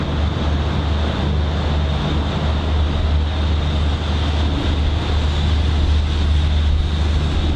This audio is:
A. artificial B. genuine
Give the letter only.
B